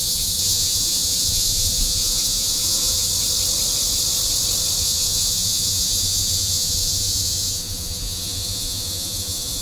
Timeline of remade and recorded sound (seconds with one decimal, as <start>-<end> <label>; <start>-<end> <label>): 0.0-3.1 remade; 3.1-4.8 recorded; 4.8-9.6 remade